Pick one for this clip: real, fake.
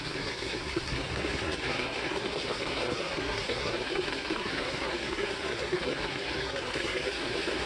fake